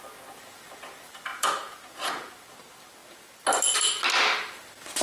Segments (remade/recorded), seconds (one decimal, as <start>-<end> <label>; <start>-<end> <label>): 0.0-1.3 recorded; 1.3-2.3 remade; 2.3-5.0 recorded